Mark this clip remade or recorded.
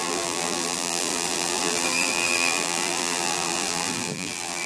remade